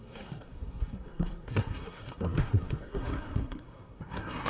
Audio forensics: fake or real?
fake